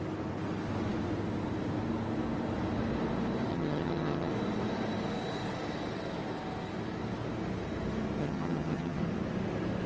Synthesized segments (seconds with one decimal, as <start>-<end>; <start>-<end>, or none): 3.5-4.3; 8.2-9.0